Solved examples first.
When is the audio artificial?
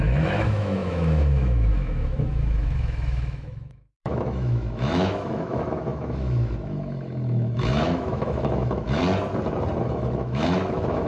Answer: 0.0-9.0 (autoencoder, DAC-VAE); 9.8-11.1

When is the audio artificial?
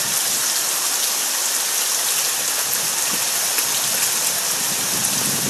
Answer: none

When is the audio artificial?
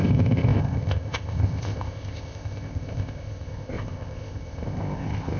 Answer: 0.0-5.4 (codec, ZipCodec)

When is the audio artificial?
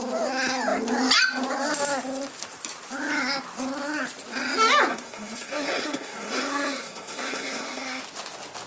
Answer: 4.9-8.0 (codec, SNAC)